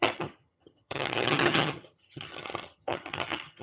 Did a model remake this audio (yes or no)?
yes